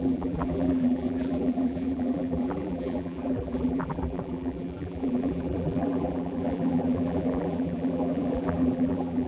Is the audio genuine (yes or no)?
no